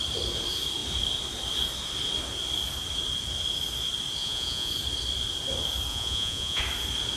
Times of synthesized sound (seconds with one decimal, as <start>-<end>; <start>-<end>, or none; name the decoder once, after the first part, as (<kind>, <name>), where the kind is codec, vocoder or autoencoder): 4.2-4.7 (vocoder, Vocos); 5.9-6.6